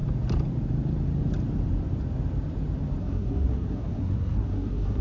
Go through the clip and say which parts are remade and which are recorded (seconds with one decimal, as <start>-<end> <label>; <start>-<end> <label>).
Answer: 0.0-3.0 recorded; 3.0-5.0 remade